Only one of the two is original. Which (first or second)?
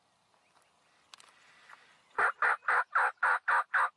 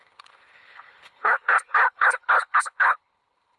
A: first